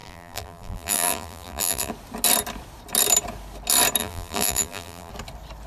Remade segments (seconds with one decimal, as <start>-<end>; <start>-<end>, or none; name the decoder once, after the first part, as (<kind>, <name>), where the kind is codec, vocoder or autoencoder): 0.0-1.9 (vocoder, BigVGAN v2); 4.0-5.1